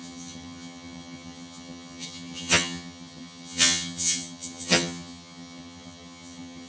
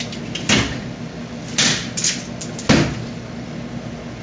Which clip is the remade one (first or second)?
first